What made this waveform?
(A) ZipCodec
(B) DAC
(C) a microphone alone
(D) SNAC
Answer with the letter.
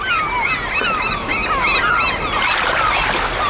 C